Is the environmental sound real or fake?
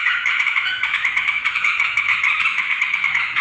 fake